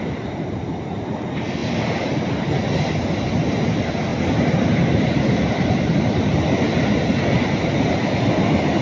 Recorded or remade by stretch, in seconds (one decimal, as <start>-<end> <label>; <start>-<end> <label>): 0.0-8.8 recorded